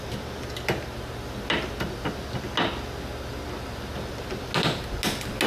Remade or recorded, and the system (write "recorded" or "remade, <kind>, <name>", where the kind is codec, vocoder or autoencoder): recorded